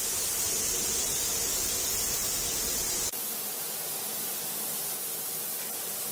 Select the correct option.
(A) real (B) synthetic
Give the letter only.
A